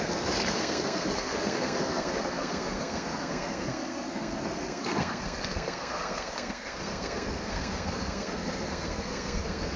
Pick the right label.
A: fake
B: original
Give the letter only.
A